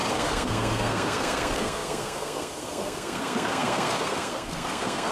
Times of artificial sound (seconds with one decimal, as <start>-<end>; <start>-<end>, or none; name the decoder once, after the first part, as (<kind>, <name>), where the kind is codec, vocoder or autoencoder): 0.0-5.1 (codec, SNAC)